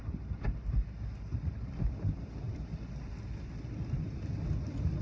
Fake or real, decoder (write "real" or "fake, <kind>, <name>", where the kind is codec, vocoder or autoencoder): real